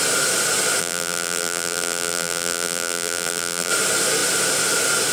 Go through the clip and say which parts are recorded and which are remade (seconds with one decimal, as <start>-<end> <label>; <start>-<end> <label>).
0.0-0.8 recorded; 0.8-3.7 remade; 3.7-5.1 recorded